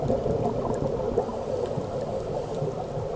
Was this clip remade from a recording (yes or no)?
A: no